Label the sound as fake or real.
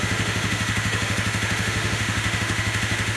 fake